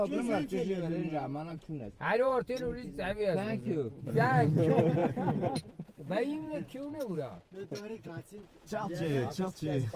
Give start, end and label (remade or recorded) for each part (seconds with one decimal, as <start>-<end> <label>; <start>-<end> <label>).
0.0-1.0 remade; 1.0-1.5 recorded; 1.5-10.0 remade